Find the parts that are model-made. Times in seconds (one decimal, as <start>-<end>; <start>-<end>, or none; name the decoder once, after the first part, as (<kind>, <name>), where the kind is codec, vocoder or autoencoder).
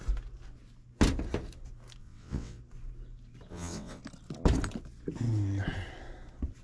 2.0-2.6 (vocoder, WaveNeXt); 3.5-4.0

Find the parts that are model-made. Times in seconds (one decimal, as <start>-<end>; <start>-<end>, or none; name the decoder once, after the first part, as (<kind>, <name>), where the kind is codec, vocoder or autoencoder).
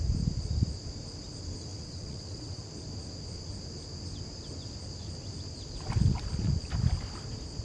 1.7-2.6 (vocoder, WaveNeXt)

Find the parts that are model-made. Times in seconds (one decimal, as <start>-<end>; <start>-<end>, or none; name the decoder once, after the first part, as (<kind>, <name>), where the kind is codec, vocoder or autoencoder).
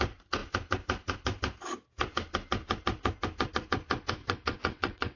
4.2-5.2 (vocoder, WaveNeXt)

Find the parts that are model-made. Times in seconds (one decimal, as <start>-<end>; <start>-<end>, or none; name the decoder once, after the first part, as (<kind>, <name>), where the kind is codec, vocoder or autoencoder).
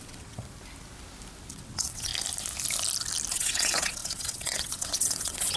0.0-0.4 (vocoder, WaveNeXt); 1.5-2.1; 3.3-5.6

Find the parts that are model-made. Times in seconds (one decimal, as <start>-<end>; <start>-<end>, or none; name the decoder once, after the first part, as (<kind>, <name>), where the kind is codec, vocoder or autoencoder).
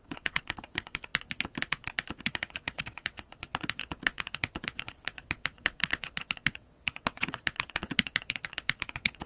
0.0-1.1 (vocoder, WaveNeXt); 2.2-9.3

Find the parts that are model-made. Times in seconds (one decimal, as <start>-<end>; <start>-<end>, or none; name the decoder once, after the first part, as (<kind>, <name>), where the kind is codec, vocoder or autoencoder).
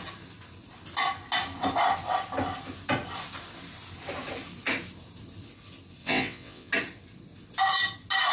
6.0-6.7 (vocoder, WaveNeXt)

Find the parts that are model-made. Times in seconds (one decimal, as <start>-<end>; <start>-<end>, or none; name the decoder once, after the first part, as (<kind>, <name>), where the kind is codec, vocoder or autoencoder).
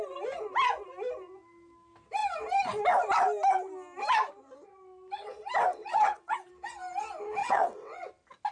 5.8-6.5 (vocoder, WaveNeXt); 7.4-8.1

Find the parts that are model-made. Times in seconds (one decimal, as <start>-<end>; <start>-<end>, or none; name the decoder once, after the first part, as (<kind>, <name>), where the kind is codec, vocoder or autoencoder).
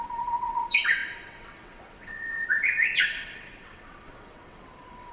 0.0-5.1 (vocoder, WaveNeXt)